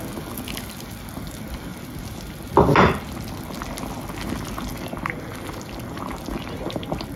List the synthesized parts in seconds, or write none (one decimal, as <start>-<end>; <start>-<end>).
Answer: none

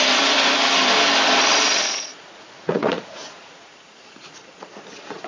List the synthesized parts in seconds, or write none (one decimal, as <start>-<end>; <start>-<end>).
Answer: 2.1-5.3

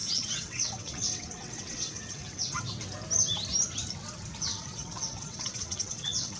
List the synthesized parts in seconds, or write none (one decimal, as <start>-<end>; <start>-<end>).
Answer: 0.0-2.6; 4.5-6.4

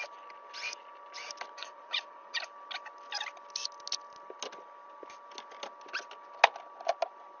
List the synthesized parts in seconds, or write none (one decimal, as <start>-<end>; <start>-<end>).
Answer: 1.6-2.4

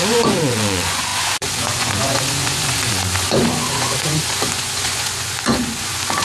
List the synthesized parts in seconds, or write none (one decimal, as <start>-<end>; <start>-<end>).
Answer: 0.0-6.2

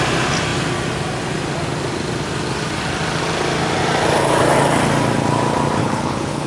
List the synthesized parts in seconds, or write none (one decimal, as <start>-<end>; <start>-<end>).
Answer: 5.8-6.5